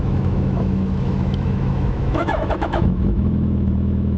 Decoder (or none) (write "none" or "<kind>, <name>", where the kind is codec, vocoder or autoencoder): autoencoder, DAC-VAE